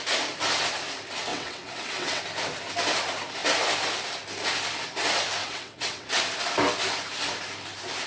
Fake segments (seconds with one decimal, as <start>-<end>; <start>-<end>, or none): 1.3-2.2; 5.4-6.2